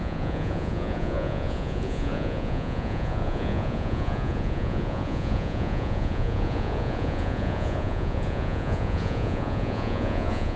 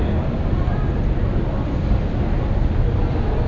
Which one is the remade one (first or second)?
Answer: first